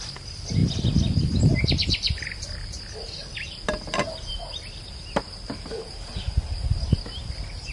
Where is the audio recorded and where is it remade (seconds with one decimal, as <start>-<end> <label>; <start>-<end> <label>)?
0.0-7.7 recorded